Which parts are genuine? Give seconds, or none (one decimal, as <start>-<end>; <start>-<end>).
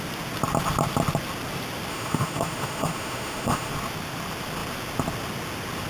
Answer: 0.0-1.9; 3.7-5.9